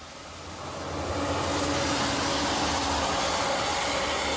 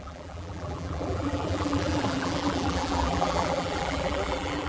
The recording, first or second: first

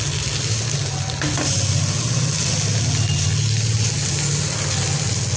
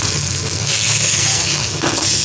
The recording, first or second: first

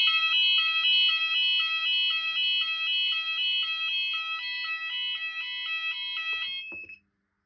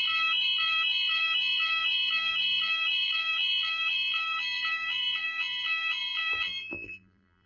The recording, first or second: first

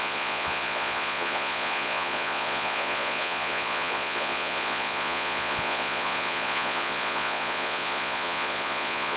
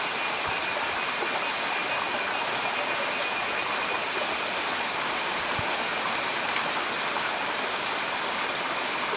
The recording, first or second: second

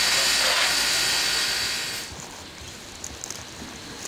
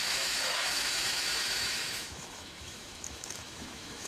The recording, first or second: first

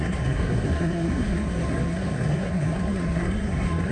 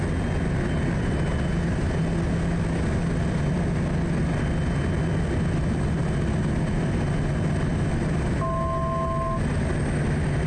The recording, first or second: second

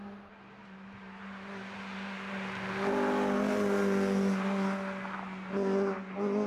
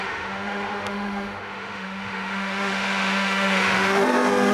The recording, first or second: first